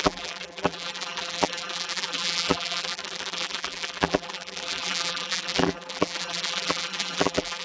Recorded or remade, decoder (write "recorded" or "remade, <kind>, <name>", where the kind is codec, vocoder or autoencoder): remade, vocoder, BigVGAN v2